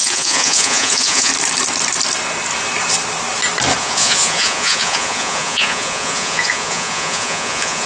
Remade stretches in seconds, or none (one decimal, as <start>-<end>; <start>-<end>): 0.0-1.3; 3.8-7.9